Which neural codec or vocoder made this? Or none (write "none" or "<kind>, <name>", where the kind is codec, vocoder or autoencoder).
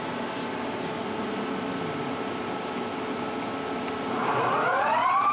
none